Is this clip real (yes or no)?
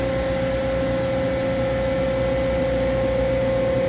yes